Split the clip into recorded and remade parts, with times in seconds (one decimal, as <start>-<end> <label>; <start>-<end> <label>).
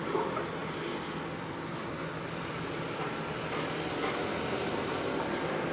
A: 0.0-5.7 recorded